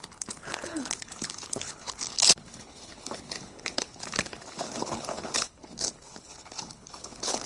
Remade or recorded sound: remade